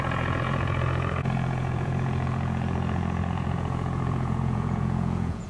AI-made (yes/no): yes